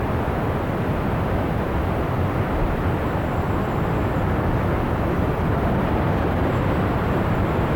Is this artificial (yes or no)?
no